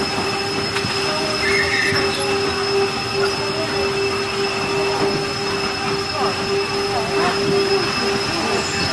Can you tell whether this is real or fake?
real